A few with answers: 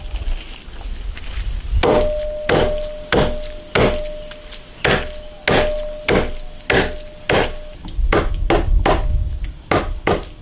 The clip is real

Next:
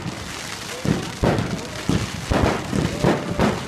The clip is real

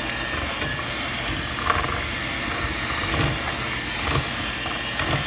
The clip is real